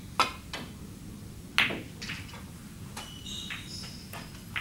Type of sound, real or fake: real